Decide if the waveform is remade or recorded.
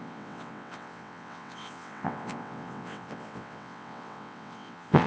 remade